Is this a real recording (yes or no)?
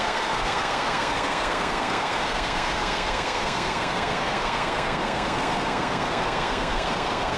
no